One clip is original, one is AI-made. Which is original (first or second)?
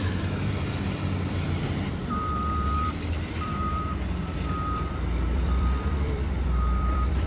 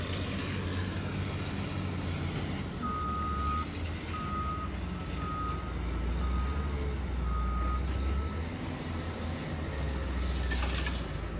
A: second